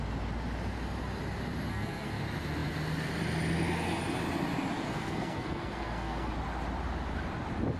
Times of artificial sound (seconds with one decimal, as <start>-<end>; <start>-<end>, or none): 1.7-2.2; 4.9-6.3